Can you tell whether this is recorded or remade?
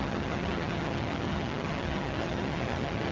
remade